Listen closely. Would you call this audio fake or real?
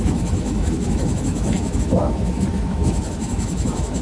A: fake